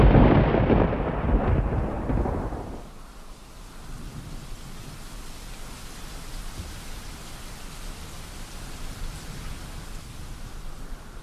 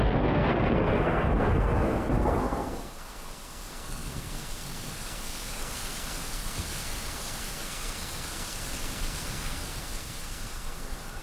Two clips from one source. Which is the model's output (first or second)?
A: second